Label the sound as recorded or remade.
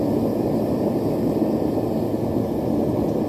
recorded